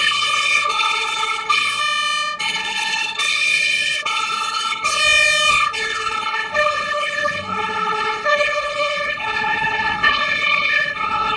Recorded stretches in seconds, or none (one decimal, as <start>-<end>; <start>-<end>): 1.8-2.4; 5.0-5.5